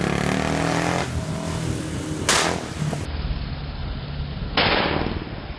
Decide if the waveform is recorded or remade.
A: recorded